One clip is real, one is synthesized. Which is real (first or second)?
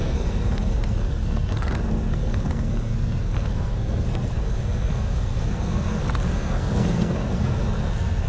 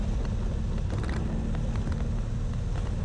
second